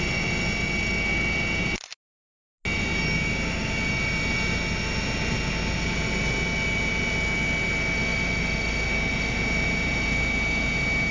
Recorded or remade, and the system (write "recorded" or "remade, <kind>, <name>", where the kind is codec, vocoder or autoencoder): recorded